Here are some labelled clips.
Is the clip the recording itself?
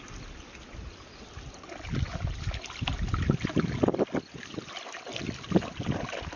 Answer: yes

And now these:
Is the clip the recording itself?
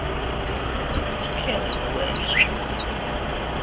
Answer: yes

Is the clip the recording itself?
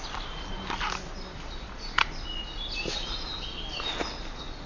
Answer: yes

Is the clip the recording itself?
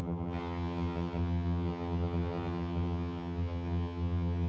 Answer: no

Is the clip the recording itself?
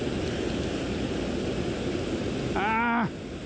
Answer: yes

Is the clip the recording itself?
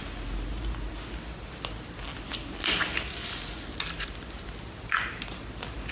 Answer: yes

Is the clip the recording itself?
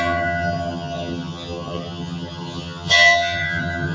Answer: no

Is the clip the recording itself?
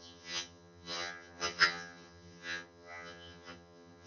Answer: no